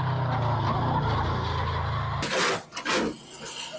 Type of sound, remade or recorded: recorded